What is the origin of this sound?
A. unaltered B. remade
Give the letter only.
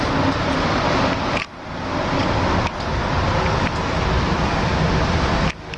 A